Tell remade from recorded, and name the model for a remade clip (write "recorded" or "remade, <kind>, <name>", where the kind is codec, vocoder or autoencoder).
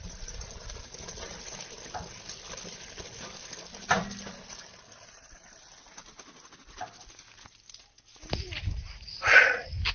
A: recorded